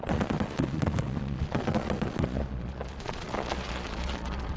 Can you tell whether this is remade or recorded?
remade